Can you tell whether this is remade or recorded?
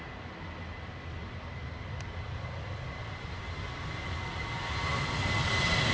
recorded